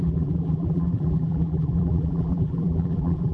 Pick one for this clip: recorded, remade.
remade